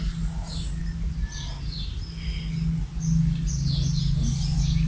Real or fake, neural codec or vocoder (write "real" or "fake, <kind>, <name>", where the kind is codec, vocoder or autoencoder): real